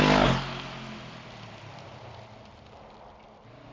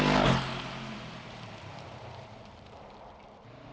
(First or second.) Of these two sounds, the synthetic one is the second